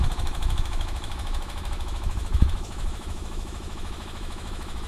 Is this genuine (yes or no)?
no